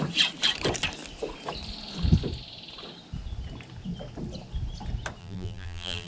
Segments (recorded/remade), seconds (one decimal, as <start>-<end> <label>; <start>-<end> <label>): 0.0-5.2 recorded; 5.2-6.1 remade